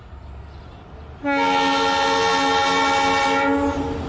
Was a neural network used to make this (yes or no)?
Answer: no